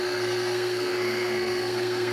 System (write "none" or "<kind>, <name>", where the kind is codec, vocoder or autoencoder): codec, SNAC